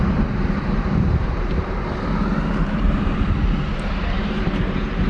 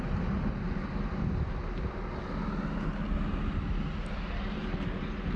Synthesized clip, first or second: first